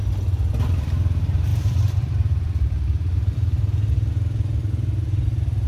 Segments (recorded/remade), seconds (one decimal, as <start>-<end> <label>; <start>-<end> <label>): 0.0-1.5 recorded; 1.5-3.6 remade; 3.6-4.6 recorded; 4.6-5.2 remade; 5.2-5.7 recorded